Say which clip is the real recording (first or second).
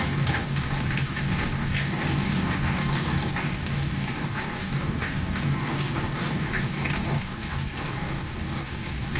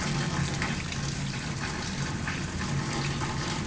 second